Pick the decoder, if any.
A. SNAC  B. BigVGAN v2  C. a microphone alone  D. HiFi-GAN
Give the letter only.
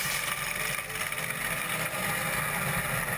C